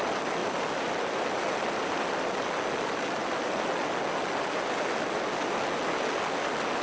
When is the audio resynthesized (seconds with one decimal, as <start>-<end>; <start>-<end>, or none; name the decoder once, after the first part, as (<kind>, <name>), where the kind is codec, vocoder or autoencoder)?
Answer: 0.4-2.3 (vocoder, BigVGAN v2); 3.2-4.0